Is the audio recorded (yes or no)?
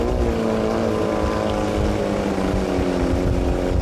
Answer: yes